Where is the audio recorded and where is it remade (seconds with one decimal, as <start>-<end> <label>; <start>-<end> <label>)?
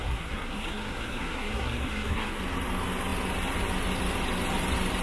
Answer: 0.0-2.4 remade; 2.4-5.0 recorded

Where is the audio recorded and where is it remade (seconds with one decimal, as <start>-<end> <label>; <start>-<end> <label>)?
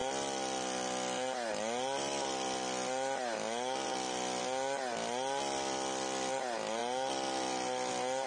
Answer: 0.0-8.3 recorded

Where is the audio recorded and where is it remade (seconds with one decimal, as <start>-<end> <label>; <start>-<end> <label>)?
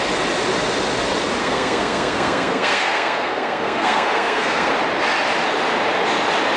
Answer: 0.0-1.4 recorded; 1.4-4.7 remade; 4.7-6.6 recorded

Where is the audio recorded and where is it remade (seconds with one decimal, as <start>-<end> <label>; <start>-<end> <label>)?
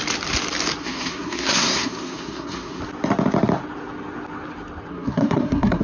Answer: 0.0-0.8 recorded; 0.8-2.8 remade; 2.8-4.9 recorded; 4.9-5.8 remade